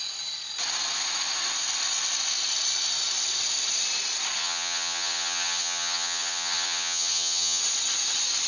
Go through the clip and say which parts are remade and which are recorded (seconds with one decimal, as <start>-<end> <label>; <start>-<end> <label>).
0.0-4.4 recorded; 4.4-7.6 remade; 7.6-8.5 recorded